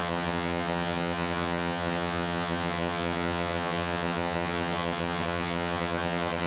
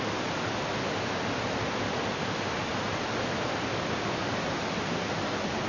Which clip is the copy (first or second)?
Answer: first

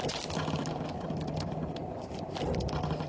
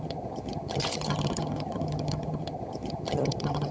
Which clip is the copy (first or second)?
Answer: second